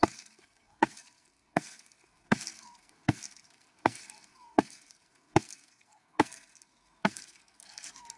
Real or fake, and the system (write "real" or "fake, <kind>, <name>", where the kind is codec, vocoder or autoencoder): fake, codec, SNAC